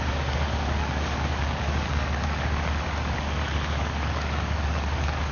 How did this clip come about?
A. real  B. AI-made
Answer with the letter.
B